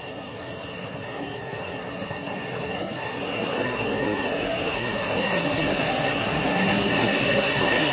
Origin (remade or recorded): remade